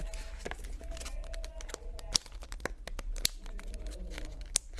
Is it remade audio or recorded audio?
recorded